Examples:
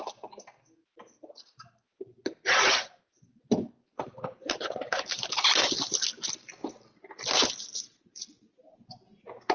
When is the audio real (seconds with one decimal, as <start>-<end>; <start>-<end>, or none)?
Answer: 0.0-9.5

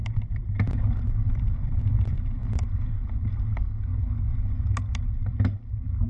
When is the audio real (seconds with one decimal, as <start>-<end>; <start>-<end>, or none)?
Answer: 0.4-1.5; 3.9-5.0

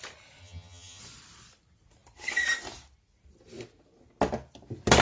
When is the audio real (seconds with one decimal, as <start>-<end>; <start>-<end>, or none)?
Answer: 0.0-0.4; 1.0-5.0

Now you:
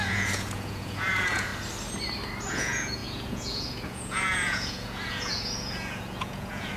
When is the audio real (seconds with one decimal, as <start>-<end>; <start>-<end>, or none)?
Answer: 1.5-2.5

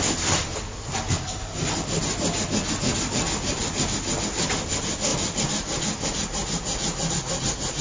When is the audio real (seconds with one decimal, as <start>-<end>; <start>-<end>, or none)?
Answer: 0.0-7.8